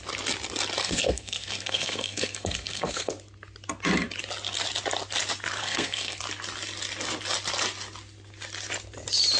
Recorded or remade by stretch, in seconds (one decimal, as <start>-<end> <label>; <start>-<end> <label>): 0.0-0.8 recorded; 0.8-3.1 remade; 3.1-5.6 recorded; 5.6-6.2 remade; 6.2-9.4 recorded